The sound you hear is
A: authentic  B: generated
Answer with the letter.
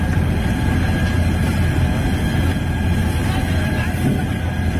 A